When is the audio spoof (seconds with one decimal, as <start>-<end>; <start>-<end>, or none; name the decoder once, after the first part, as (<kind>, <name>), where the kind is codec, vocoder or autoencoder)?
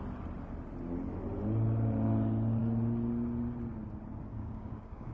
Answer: 4.3-5.1 (codec, DAC)